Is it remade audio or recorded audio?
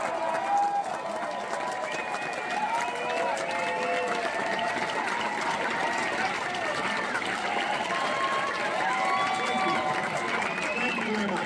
recorded